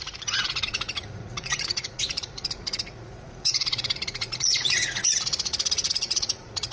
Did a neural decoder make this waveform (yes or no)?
yes